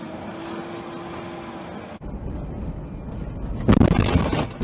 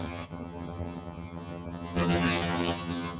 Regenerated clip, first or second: second